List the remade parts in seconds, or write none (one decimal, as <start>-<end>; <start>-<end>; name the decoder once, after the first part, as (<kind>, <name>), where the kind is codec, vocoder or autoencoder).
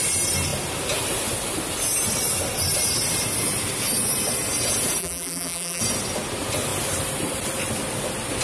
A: 5.0-5.8 (vocoder, BigVGAN v2)